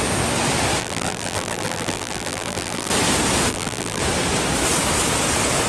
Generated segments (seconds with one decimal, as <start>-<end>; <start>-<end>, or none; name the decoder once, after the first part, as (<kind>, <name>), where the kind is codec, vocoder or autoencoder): 0.8-2.9 (vocoder, BigVGAN v2); 3.5-4.0